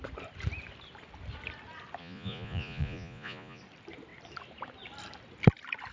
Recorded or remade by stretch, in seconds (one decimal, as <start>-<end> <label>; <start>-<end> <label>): 0.0-2.0 recorded; 2.0-3.6 remade; 3.6-5.9 recorded